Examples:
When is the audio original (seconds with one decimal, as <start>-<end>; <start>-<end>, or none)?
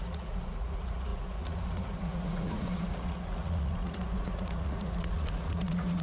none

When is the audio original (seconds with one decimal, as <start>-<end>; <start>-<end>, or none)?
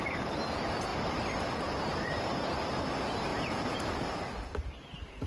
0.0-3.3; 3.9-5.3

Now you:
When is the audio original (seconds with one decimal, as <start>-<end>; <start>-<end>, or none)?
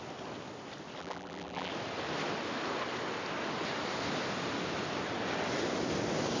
0.0-1.0; 1.7-6.4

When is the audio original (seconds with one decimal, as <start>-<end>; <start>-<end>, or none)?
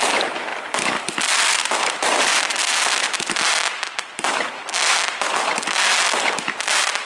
0.0-7.1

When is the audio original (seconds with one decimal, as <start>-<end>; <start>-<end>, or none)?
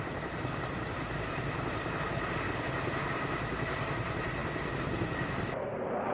none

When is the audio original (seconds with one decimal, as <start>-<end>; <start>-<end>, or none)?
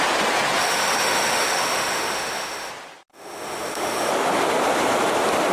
0.0-0.6; 2.7-3.1; 4.1-5.5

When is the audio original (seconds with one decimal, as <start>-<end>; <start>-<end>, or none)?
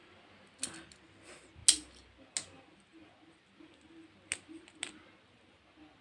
0.0-6.0